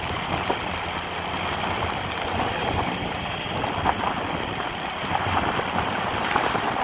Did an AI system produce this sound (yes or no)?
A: no